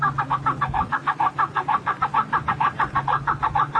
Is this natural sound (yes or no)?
yes